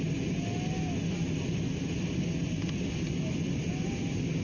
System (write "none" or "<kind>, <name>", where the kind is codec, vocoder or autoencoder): none